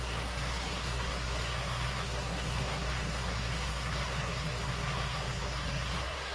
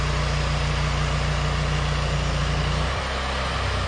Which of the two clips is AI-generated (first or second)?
first